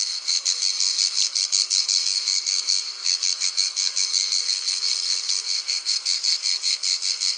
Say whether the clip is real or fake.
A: fake